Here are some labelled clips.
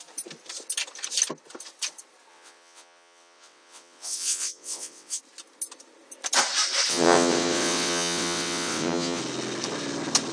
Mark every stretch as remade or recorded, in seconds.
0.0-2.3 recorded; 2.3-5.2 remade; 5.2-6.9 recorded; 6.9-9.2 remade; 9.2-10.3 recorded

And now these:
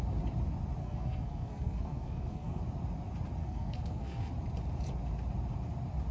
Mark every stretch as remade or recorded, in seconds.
0.0-0.8 recorded; 0.8-2.6 remade; 2.6-3.4 recorded; 3.4-4.3 remade; 4.3-6.1 recorded

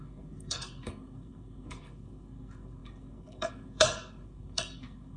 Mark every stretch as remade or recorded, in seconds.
0.0-5.2 remade

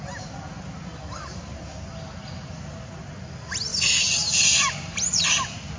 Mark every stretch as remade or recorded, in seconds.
0.0-5.8 recorded

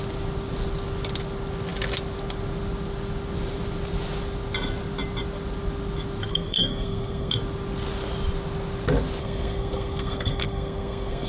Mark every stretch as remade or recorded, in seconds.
0.0-6.3 recorded; 6.3-7.3 remade; 7.3-9.2 recorded; 9.2-11.3 remade

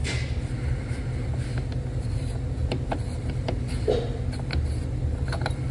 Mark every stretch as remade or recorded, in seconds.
0.0-5.7 recorded

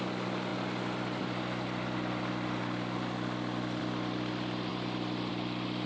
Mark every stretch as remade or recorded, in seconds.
0.0-5.9 recorded